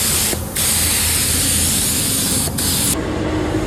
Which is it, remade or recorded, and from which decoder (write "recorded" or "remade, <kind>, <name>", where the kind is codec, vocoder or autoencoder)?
recorded